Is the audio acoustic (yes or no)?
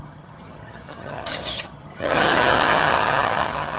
no